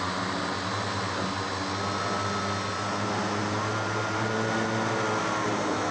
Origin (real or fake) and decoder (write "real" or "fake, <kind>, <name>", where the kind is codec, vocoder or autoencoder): real